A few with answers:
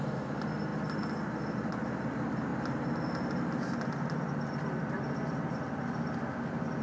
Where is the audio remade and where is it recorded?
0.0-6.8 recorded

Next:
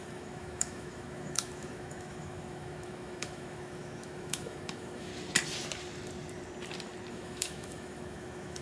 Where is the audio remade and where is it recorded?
0.0-5.1 remade; 5.1-7.1 recorded; 7.1-8.6 remade

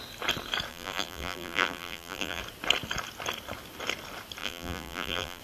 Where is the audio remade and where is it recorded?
0.0-0.7 recorded; 0.7-2.4 remade; 2.4-4.4 recorded; 4.4-5.4 remade

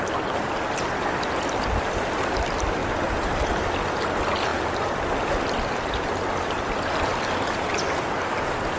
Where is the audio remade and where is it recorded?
0.0-8.8 recorded

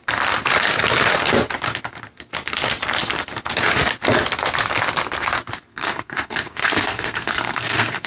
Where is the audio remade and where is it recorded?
0.0-5.7 recorded; 5.7-8.1 remade

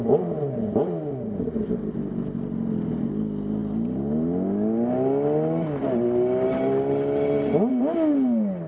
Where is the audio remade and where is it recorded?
0.0-8.7 recorded

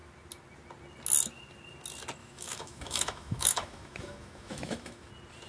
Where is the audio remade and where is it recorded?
0.0-2.2 recorded; 2.2-5.1 remade; 5.1-5.5 recorded